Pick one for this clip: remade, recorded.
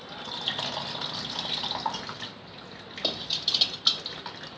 recorded